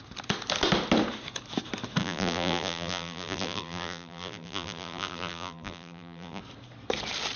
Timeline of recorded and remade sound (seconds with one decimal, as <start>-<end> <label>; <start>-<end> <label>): 0.0-2.0 recorded; 2.0-6.4 remade; 6.4-7.4 recorded